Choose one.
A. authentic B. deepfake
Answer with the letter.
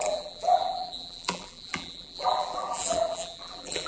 B